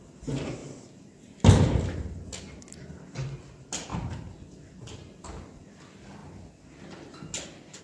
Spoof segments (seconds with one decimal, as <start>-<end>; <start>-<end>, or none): none